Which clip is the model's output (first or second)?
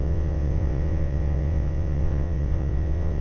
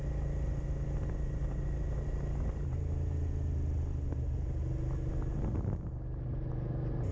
first